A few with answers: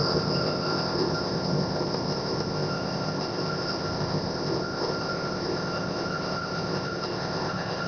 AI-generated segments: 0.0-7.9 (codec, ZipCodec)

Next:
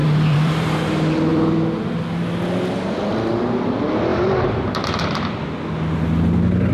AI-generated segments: 0.0-0.8 (vocoder, BigVGAN v2); 1.3-2.0; 4.1-5.6

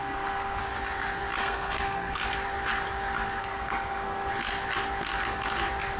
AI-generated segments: 0.0-0.6 (codec, SNAC); 1.4-2.2; 3.4-4.3

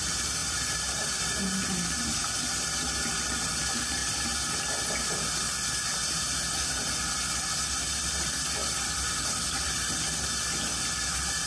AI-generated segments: 0.4-1.2 (vocoder, BigVGAN v2)

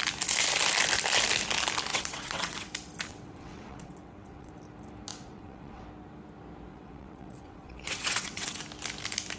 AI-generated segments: 1.9-2.7 (vocoder, WaveNeXt); 3.1-4.5; 5.1-5.8; 6.7-8.6

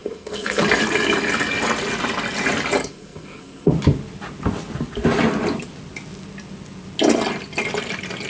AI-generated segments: 0.0-0.6 (codec, SNAC); 2.9-3.7

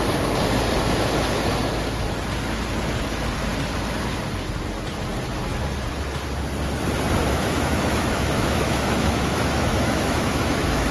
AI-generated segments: 7.2-10.9 (autoencoder, DAC-VAE)